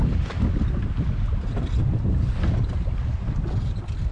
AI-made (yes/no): no